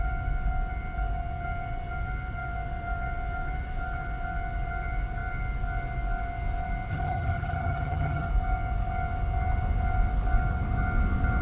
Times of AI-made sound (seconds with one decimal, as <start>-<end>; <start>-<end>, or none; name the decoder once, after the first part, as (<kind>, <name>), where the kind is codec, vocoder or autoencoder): 6.9-8.3 (vocoder, HiFi-GAN)